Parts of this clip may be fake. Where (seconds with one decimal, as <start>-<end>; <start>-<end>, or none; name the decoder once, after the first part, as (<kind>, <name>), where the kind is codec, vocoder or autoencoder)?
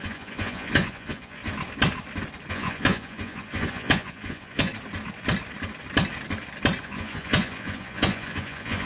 0.0-1.4 (vocoder, Vocos); 2.5-4.7; 6.8-8.9